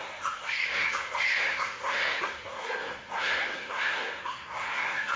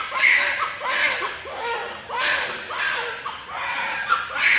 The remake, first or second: first